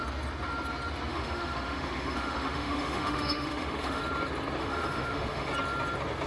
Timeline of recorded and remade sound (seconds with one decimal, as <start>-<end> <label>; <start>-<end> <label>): 0.0-1.1 recorded; 1.1-4.0 remade; 4.0-4.6 recorded; 4.6-5.5 remade; 5.5-6.3 recorded